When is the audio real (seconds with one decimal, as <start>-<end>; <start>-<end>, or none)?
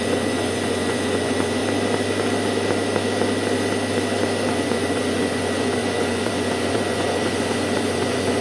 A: 1.6-4.5